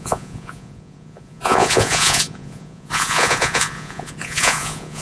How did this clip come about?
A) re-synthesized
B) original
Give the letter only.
A